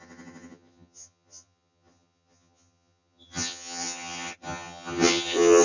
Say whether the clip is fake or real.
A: fake